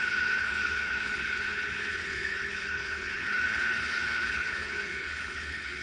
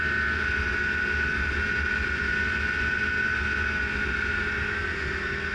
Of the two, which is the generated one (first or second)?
first